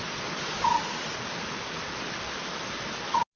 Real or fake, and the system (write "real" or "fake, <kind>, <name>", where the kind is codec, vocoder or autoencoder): real